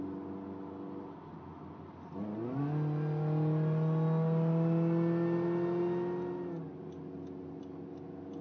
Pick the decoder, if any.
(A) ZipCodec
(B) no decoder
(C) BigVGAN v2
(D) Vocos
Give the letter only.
B